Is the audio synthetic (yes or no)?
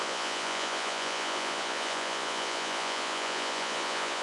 yes